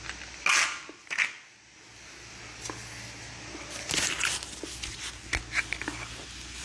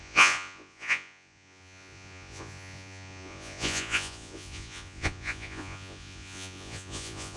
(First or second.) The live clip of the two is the first